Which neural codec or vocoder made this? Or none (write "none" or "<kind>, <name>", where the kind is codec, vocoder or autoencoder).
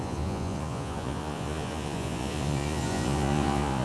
vocoder, Vocos